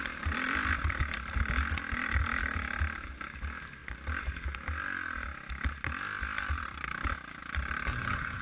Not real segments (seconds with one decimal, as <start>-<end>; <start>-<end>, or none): 7.9-8.4